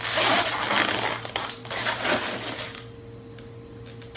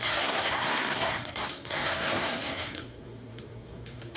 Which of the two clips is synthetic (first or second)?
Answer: second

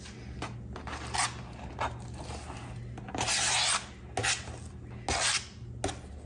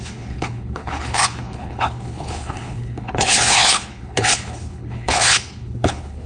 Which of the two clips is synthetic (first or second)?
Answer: second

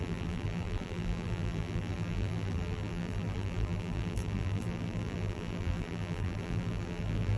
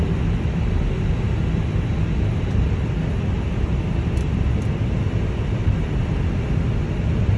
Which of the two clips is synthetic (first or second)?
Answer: first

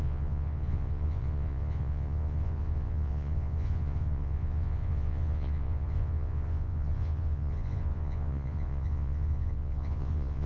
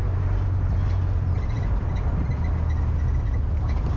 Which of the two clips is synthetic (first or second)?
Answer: first